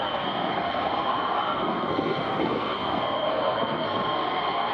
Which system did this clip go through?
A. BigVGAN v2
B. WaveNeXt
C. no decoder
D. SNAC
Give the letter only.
D